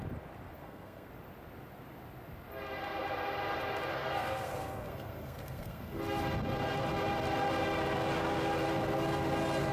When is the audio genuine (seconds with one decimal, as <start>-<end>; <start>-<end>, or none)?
0.0-0.6; 1.1-3.9; 6.0-9.7